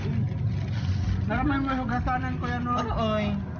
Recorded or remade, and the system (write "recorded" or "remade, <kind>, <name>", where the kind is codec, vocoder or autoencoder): recorded